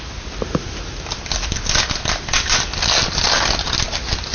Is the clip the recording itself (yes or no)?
yes